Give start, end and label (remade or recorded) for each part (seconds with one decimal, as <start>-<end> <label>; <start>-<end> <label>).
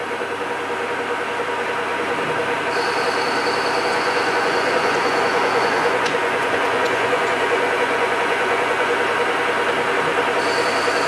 0.0-3.9 recorded; 3.9-8.9 remade; 8.9-11.1 recorded